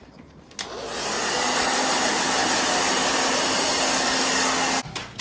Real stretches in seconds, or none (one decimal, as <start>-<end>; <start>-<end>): 0.0-3.0; 3.8-5.2